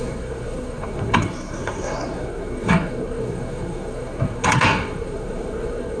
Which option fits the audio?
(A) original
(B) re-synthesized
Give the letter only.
B